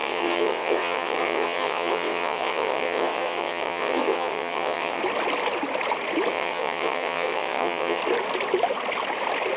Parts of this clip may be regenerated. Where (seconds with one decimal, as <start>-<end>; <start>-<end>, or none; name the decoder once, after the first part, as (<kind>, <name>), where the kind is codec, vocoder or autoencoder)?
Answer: 0.0-5.0 (vocoder, WaveNeXt); 6.3-8.0